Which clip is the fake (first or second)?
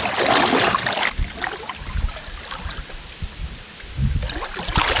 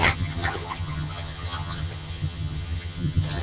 second